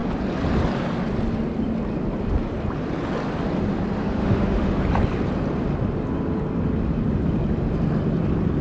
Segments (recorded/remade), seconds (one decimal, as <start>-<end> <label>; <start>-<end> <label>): 0.0-4.0 recorded; 4.0-4.7 remade; 4.7-8.6 recorded